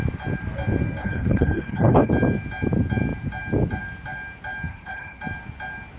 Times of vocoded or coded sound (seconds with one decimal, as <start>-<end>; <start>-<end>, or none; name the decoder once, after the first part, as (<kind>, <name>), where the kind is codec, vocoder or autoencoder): 1.0-2.1 (codec, HILCodec); 4.7-5.2